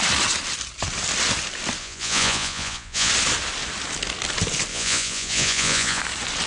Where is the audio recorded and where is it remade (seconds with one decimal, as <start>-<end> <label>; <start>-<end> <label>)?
0.0-1.8 recorded; 1.8-3.1 remade; 3.1-4.7 recorded; 4.7-6.0 remade; 6.0-6.5 recorded